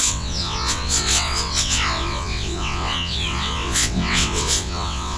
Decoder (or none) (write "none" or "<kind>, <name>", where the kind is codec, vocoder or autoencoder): vocoder, WaveNeXt